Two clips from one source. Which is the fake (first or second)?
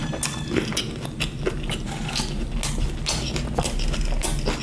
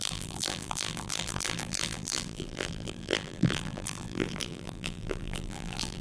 second